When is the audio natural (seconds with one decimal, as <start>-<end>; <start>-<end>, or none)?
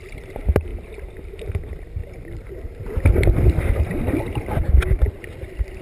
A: 0.0-2.0; 4.2-5.8